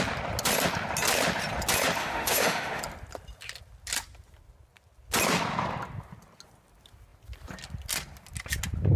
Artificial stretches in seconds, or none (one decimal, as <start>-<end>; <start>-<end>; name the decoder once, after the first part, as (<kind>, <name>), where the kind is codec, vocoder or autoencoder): 2.0-2.8 (autoencoder, DAC-VAE)